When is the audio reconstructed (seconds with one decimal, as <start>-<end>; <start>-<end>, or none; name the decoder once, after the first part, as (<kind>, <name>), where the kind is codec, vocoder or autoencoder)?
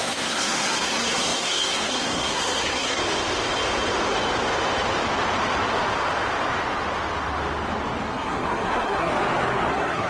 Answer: 0.0-3.0 (codec, SNAC); 8.0-9.1; 9.7-10.1